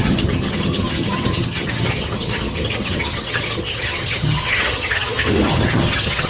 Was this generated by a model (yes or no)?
yes